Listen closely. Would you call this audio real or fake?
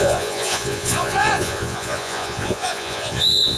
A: fake